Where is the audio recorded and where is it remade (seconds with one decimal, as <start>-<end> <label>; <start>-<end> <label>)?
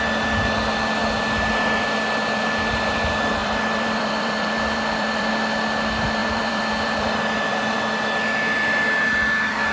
0.0-3.4 recorded; 3.4-5.3 remade; 5.3-6.2 recorded; 6.2-7.6 remade; 7.6-9.7 recorded